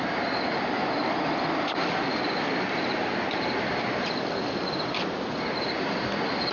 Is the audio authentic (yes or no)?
yes